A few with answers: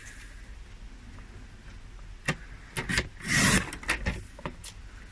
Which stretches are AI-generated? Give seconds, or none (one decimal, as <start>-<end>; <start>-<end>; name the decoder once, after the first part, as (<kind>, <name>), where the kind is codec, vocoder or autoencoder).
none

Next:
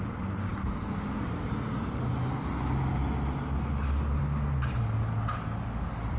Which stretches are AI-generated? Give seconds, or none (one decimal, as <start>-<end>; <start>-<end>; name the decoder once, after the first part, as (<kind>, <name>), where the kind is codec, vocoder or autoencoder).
none

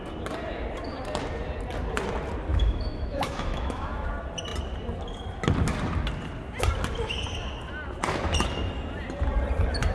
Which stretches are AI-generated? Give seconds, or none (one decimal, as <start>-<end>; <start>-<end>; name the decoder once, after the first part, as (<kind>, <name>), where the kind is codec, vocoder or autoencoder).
2.5-4.1 (autoencoder, DAC-VAE)